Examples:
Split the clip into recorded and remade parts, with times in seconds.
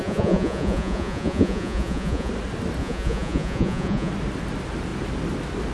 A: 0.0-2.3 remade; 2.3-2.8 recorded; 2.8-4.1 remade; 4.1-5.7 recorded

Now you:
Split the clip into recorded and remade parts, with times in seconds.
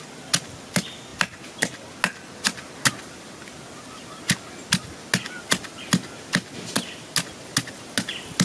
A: 0.0-8.4 recorded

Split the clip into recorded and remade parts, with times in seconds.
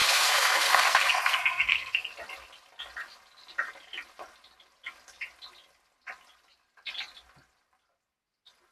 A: 0.0-2.1 remade; 2.1-8.7 recorded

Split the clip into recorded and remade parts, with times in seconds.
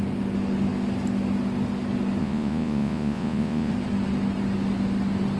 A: 0.0-2.2 recorded; 2.2-3.7 remade; 3.7-5.4 recorded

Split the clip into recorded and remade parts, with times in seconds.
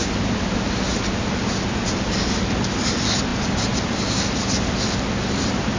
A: 0.0-5.8 recorded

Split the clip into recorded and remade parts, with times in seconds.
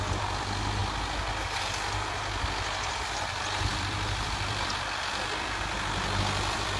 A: 0.0-0.8 remade; 0.8-2.9 recorded; 2.9-6.8 remade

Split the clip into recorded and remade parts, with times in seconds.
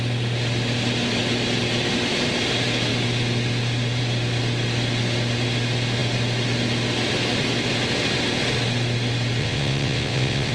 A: 0.0-9.4 recorded; 9.4-10.5 remade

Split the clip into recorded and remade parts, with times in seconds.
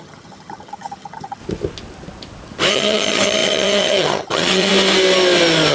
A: 0.0-1.4 remade; 1.4-2.7 recorded; 2.7-4.7 remade; 4.7-5.7 recorded